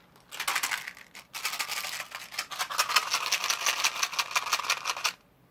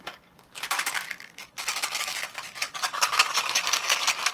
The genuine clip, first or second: first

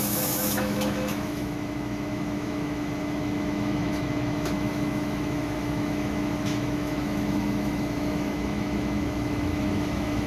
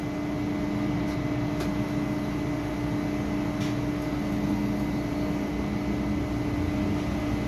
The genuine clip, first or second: second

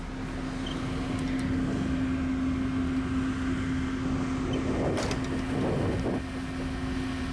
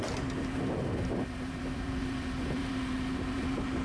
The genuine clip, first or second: first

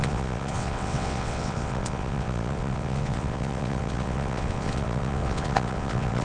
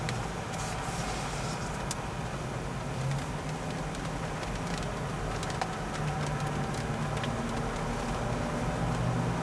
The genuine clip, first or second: second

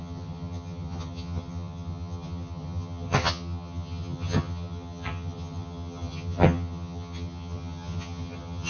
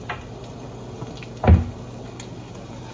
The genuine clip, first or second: second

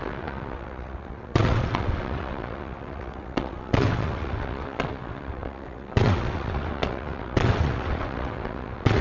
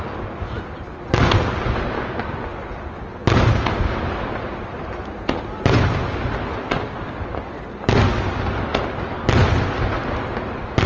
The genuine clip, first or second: second